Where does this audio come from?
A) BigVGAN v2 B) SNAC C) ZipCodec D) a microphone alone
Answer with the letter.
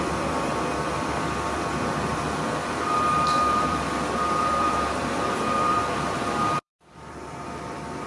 A